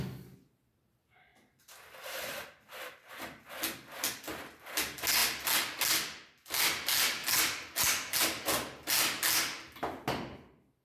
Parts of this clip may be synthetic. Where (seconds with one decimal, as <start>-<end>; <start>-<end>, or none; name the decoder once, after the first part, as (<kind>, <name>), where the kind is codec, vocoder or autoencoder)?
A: 1.3-3.4 (vocoder, BigVGAN v2)